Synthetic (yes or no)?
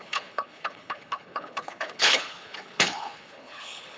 yes